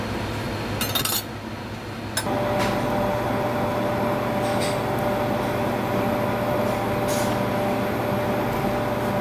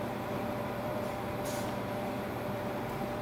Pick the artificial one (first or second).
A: second